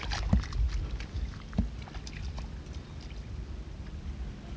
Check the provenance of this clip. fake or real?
real